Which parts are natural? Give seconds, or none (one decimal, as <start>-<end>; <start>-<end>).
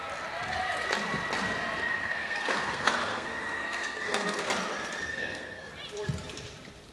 0.0-1.9; 4.5-5.1; 5.7-6.9